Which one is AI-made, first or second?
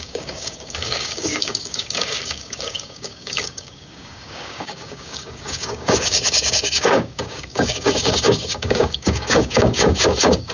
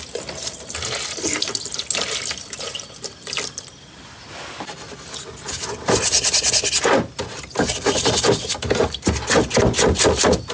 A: first